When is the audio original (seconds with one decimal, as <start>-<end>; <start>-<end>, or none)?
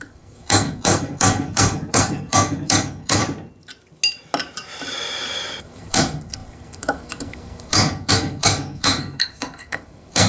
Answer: 3.2-5.6